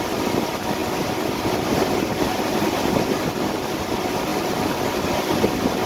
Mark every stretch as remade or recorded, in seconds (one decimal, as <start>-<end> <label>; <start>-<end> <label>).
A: 0.0-4.3 recorded; 4.3-5.3 remade; 5.3-5.9 recorded